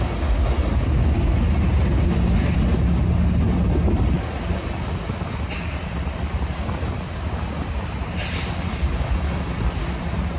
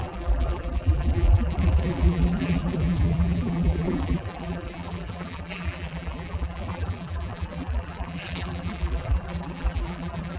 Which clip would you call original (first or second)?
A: first